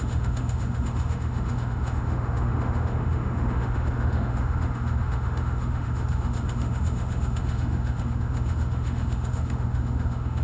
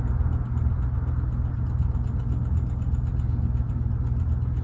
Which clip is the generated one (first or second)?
first